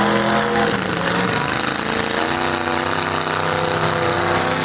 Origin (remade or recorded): recorded